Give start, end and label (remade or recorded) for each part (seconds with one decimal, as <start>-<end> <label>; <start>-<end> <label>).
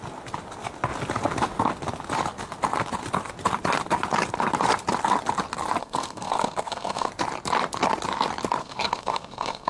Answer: 0.0-5.8 recorded; 5.8-7.1 remade; 7.1-8.6 recorded; 8.6-9.7 remade